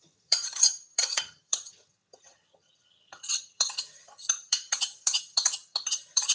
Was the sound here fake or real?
fake